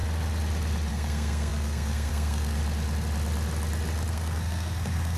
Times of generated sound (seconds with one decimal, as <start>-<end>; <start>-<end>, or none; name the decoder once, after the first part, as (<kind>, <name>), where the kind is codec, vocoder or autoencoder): 0.9-2.6 (codec, SNAC); 4.1-5.2